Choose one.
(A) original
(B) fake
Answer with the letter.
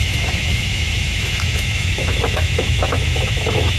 B